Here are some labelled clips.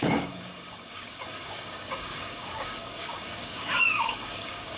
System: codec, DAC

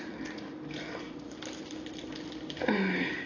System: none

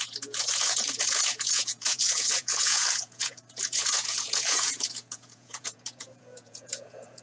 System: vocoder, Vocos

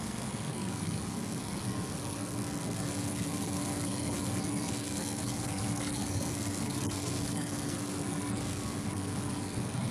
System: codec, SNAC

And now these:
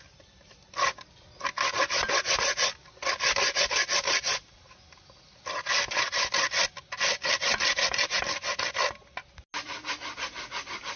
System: none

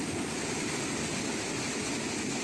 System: none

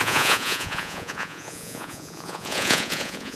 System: vocoder, Vocos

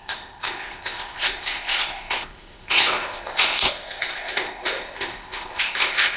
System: codec, ZipCodec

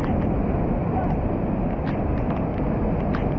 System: none